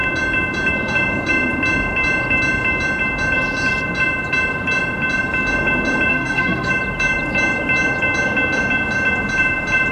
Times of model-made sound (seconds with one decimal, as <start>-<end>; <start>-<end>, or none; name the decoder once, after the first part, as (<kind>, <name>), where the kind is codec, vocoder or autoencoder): 6.1-6.7 (codec, SNAC)